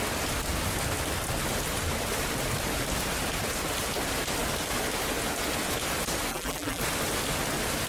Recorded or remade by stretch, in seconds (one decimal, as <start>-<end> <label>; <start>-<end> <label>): 0.0-6.3 recorded; 6.3-6.8 remade; 6.8-7.9 recorded